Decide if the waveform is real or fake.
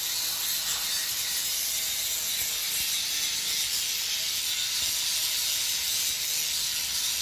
real